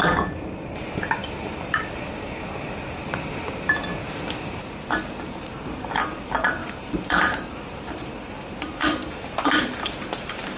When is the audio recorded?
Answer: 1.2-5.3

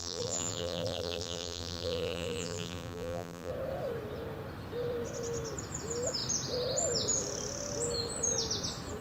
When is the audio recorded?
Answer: 3.5-9.0